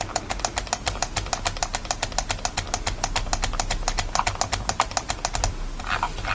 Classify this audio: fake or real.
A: real